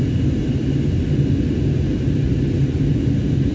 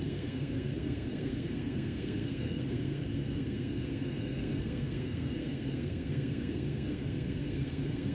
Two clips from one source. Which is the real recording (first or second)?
first